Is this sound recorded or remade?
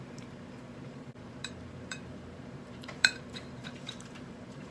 remade